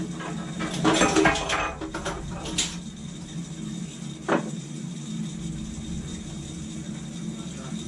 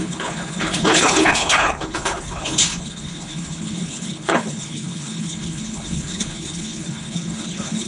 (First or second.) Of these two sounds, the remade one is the second